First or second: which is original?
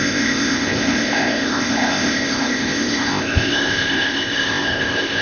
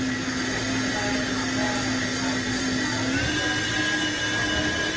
second